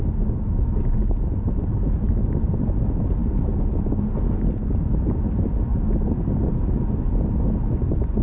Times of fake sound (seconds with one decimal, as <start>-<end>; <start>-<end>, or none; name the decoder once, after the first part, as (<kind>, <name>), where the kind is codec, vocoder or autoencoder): none